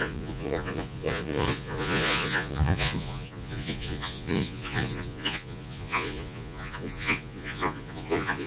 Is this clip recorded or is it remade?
remade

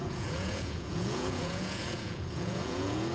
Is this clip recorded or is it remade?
remade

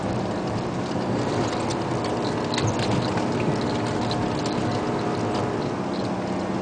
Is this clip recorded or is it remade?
recorded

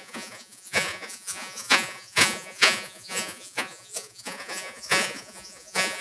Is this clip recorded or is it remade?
remade